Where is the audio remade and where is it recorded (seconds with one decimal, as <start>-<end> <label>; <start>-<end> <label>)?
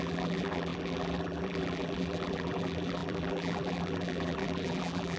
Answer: 0.0-5.2 remade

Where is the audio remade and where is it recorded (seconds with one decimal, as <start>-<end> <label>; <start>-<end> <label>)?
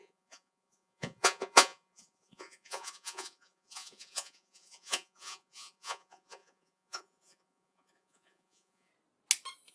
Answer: 0.0-8.9 remade; 8.9-9.7 recorded